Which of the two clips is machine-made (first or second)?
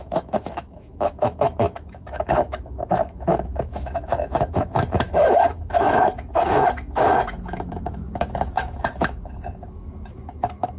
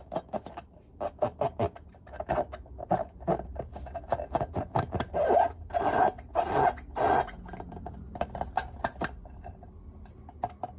first